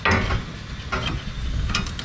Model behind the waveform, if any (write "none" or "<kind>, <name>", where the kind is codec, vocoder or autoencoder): none